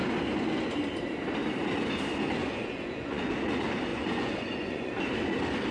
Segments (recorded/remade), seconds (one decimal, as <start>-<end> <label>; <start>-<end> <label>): 0.0-2.4 recorded; 2.4-3.3 remade; 3.3-3.9 recorded; 3.9-5.0 remade; 5.0-5.7 recorded